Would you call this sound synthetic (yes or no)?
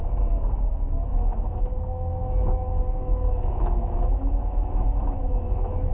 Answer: yes